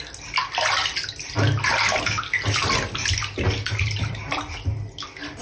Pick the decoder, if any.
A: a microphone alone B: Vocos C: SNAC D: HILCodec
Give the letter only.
A